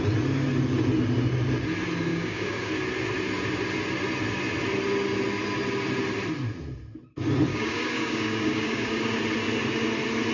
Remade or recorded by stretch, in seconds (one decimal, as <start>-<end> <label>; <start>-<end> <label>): 0.0-2.1 recorded; 2.1-2.7 remade; 2.7-7.5 recorded; 7.5-9.2 remade; 9.2-10.3 recorded